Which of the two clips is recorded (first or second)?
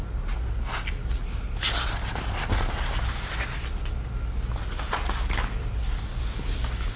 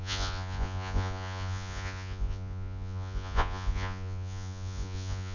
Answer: first